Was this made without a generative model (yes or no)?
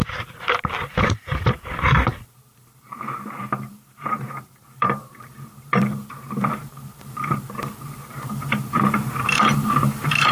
no